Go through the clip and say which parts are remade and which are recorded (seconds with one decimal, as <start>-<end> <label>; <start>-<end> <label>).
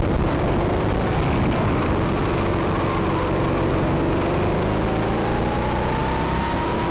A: 0.0-6.9 recorded